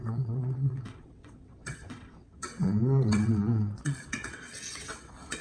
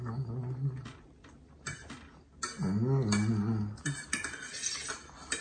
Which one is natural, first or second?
second